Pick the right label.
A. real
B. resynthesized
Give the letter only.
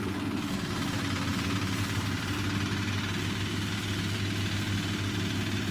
A